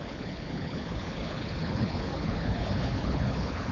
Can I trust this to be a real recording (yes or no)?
no